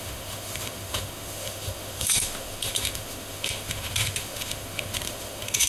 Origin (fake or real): fake